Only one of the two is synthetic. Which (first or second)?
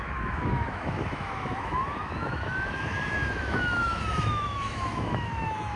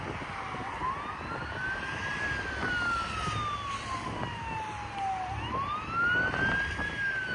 first